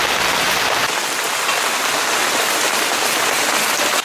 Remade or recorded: recorded